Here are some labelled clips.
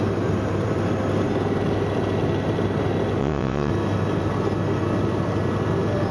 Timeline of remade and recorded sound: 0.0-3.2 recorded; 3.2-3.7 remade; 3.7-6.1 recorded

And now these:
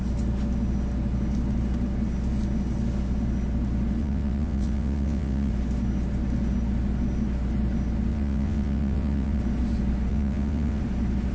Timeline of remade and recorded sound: 0.0-4.0 recorded; 4.0-5.5 remade; 5.5-8.1 recorded; 8.1-9.4 remade; 9.4-10.1 recorded; 10.1-10.8 remade; 10.8-11.3 recorded

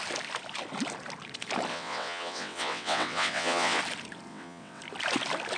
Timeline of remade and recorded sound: 0.0-1.7 recorded; 1.7-3.8 remade; 3.8-4.3 recorded; 4.3-4.8 remade; 4.8-5.6 recorded

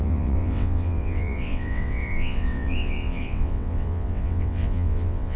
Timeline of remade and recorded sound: 0.0-5.4 remade

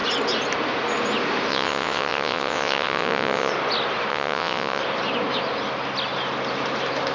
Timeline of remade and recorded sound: 0.0-1.5 recorded; 1.5-3.5 remade; 3.5-4.1 recorded; 4.1-4.8 remade; 4.8-7.1 recorded

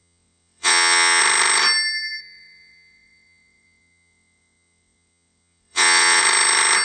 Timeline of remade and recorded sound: 0.0-1.2 remade; 1.2-2.2 recorded; 2.2-6.2 remade; 6.2-6.8 recorded